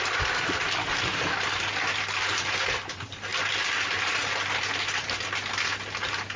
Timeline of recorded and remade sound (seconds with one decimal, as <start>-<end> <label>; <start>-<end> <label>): 0.0-6.4 recorded